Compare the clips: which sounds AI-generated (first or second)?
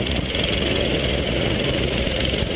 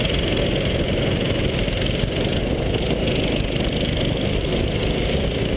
first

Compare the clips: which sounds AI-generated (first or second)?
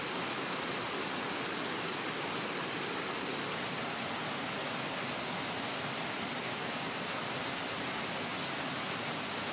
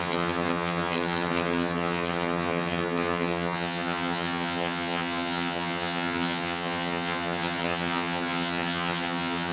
second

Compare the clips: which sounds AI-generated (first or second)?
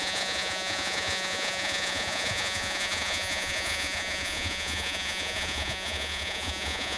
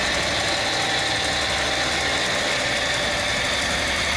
first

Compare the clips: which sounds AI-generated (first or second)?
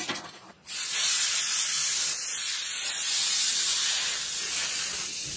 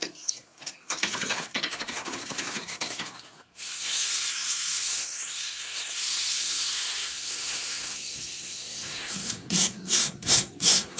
second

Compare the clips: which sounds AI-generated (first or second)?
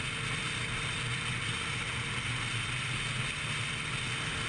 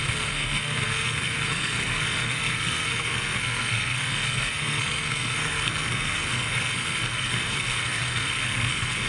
second